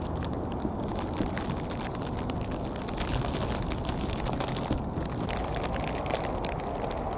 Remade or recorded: recorded